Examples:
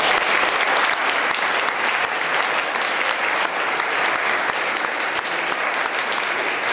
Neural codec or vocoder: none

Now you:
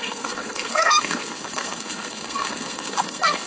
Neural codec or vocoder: codec, SNAC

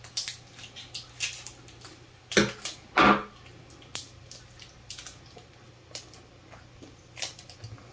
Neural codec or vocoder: none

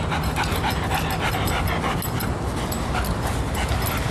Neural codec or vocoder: none